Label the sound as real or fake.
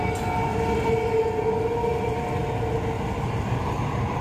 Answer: real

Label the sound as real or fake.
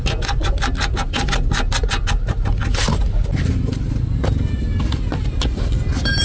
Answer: real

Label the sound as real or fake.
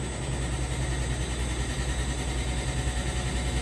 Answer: real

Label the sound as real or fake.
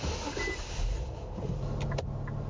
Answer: real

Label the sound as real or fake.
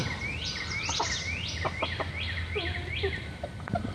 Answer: fake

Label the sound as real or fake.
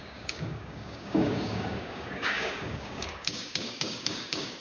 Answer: fake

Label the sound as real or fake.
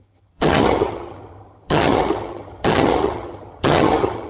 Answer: fake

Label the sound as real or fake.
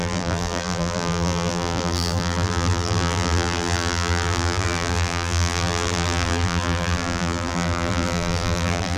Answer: fake